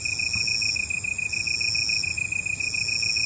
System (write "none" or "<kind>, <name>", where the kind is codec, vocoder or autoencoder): none